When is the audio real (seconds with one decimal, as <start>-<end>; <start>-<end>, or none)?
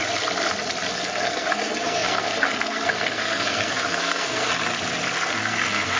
0.0-0.9; 4.5-5.4